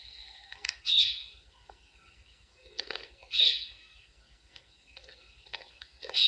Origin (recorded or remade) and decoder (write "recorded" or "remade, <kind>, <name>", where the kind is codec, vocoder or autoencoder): remade, codec, SNAC